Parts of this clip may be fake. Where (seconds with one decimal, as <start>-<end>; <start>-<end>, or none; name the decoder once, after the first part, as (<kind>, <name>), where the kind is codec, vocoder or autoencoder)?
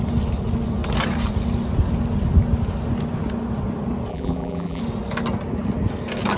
4.1-4.8 (vocoder, BigVGAN v2)